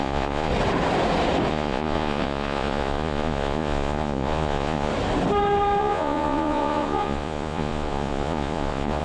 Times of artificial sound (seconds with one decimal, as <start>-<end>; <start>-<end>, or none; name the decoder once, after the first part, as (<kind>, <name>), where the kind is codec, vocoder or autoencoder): 0.0-0.5 (vocoder, Vocos); 1.5-4.9; 5.8-9.0